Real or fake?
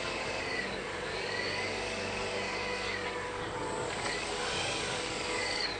fake